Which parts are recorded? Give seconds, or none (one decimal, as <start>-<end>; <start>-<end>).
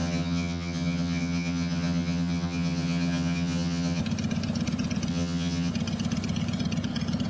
4.0-5.1; 5.7-7.3